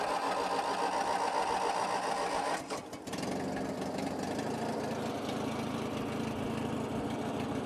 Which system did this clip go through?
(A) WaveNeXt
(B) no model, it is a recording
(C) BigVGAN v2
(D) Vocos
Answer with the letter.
B